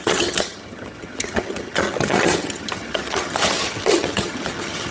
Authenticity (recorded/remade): remade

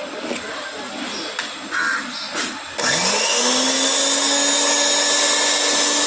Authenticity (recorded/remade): recorded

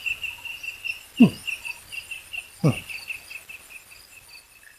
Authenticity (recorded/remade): recorded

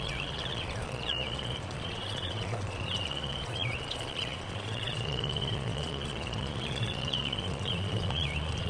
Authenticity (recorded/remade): remade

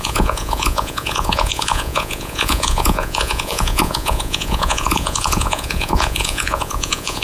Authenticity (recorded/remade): remade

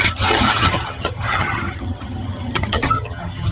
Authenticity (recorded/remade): remade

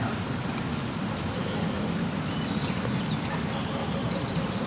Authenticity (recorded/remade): recorded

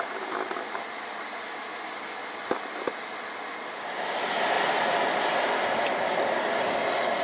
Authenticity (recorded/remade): recorded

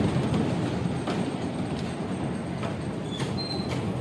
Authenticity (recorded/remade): recorded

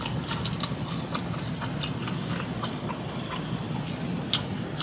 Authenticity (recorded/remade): recorded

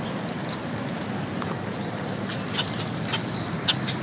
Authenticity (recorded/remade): recorded